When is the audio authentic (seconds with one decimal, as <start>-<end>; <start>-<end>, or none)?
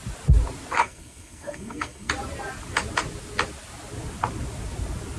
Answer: 0.0-0.8; 2.1-5.2